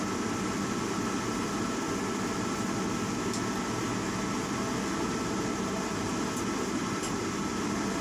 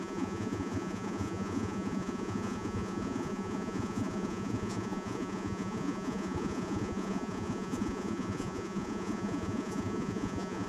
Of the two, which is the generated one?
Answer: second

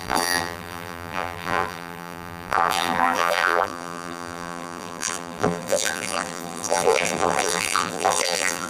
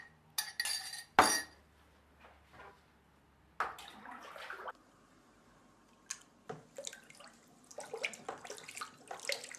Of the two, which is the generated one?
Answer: first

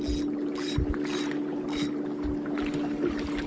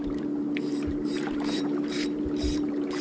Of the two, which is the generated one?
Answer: second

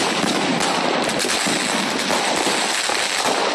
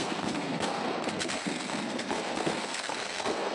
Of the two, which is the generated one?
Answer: second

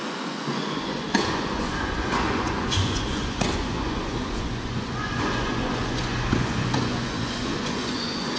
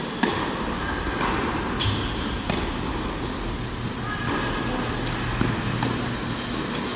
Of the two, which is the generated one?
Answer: first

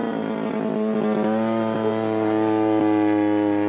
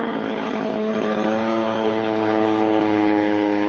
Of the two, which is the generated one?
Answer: second